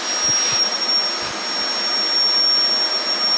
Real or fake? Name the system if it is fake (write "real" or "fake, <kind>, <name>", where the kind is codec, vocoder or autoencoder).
real